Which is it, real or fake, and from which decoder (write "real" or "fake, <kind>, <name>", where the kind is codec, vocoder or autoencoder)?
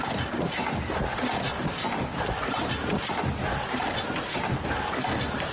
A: real